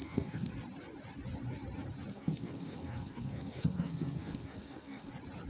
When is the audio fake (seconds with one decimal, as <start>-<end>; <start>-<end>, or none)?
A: 0.0-0.5; 2.1-5.1